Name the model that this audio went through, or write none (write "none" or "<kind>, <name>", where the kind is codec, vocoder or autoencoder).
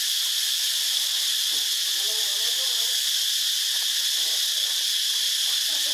none